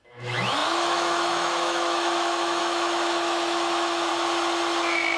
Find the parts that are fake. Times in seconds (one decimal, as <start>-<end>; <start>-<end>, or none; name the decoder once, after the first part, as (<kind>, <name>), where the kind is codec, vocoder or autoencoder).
0.0-4.1 (autoencoder, DAC-VAE)